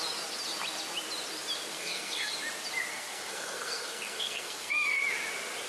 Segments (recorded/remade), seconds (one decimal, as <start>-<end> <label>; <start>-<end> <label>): 0.0-1.7 recorded; 1.7-2.3 remade; 2.3-2.9 recorded; 2.9-5.0 remade; 5.0-5.7 recorded